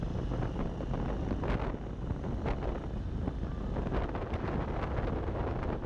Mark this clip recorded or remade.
recorded